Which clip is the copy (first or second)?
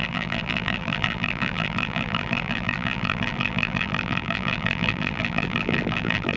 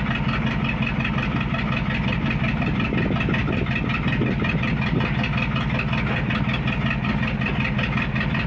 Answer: first